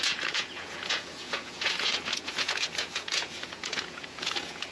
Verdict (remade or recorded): remade